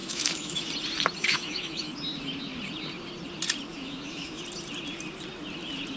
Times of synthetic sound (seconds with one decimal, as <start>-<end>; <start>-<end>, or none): 0.0-0.7; 1.2-1.9; 3.7-4.4